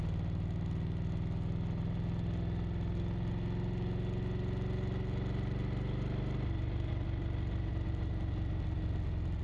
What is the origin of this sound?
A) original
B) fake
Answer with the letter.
A